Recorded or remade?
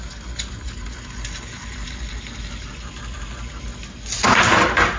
recorded